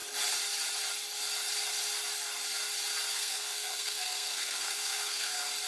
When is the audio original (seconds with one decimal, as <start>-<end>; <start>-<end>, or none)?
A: 0.0-3.1; 5.3-5.7